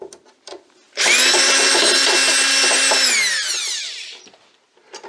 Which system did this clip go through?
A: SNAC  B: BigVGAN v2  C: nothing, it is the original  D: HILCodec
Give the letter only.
C